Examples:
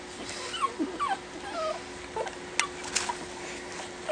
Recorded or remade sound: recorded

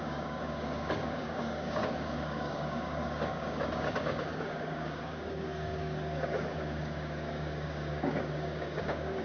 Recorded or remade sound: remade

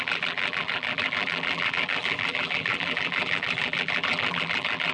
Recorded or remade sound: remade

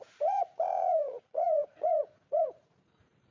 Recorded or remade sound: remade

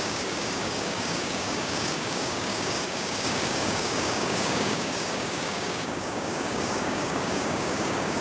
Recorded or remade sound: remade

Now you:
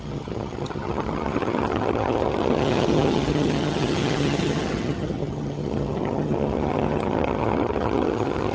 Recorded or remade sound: remade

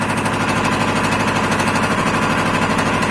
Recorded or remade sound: recorded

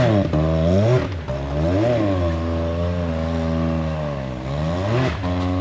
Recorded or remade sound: recorded